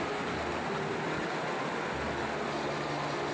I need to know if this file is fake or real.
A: real